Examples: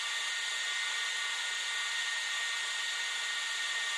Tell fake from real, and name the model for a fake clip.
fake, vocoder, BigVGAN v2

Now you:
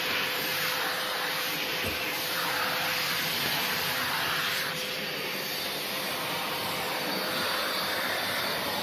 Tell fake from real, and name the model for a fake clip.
fake, vocoder, BigVGAN v2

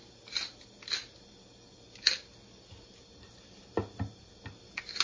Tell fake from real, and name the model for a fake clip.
real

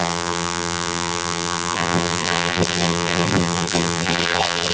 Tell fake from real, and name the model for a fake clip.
fake, vocoder, BigVGAN v2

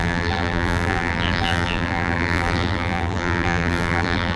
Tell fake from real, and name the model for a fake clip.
fake, vocoder, BigVGAN v2